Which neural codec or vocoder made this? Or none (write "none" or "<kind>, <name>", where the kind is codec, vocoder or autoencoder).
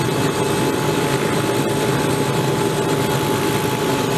none